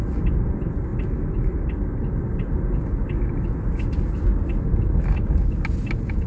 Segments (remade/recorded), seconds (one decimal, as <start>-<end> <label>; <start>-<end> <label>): 0.0-6.3 recorded